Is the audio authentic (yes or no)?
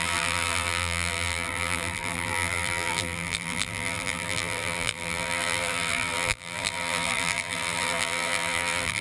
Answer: no